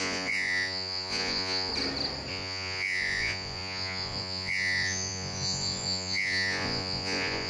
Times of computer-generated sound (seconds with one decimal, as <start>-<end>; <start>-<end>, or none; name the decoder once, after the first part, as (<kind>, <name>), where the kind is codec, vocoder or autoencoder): 0.0-1.7 (vocoder, Vocos); 2.3-7.5